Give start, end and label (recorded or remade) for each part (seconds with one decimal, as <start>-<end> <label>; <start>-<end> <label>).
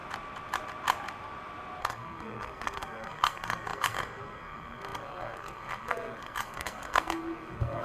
0.0-1.8 recorded; 1.8-7.8 remade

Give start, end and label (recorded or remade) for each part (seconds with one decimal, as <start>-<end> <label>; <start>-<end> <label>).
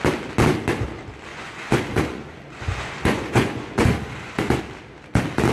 0.0-1.3 recorded; 1.3-4.6 remade; 4.6-5.5 recorded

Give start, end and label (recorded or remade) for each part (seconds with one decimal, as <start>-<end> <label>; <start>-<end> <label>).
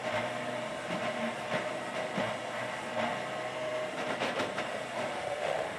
0.0-5.1 recorded; 5.1-5.8 remade